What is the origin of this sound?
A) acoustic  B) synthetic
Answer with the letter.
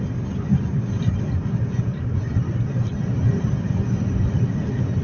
A